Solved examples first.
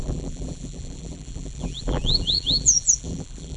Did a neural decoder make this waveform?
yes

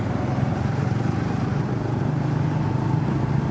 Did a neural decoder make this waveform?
yes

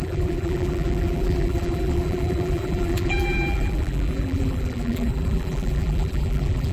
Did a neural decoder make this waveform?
yes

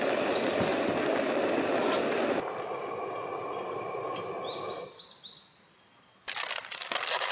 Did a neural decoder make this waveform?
no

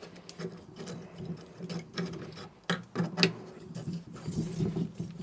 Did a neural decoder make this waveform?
no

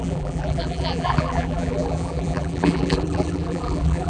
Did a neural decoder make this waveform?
yes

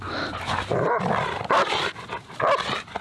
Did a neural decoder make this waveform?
no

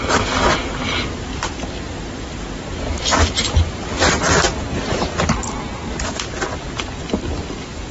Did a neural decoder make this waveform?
no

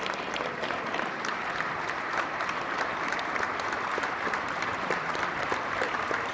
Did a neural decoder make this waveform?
no